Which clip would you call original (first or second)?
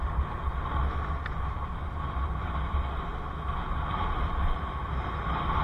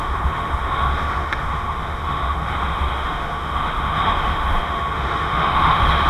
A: first